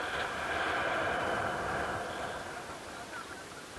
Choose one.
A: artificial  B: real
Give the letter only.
B